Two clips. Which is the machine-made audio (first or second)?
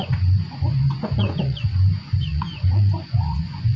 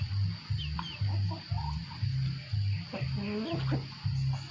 first